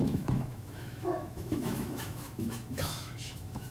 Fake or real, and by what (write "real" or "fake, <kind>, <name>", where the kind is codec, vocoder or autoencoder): fake, autoencoder, DAC-VAE